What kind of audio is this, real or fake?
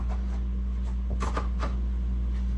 real